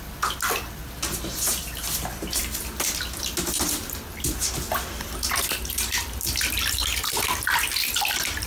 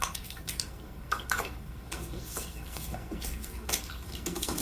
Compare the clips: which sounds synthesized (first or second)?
second